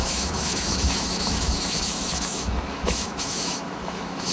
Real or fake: fake